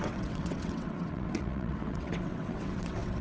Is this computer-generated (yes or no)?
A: yes